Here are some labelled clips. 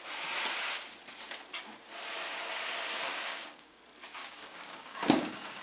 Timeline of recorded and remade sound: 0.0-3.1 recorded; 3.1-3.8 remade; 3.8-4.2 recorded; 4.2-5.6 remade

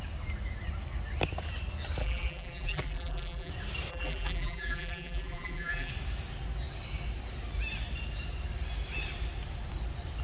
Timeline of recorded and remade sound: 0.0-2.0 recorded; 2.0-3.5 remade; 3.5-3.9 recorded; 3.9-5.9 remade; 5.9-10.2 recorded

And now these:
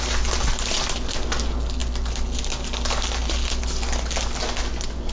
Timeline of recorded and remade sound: 0.0-5.1 recorded